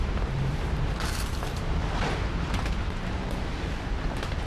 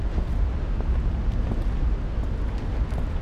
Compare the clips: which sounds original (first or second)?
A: second